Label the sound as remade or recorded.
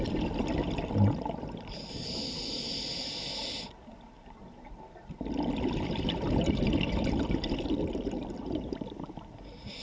recorded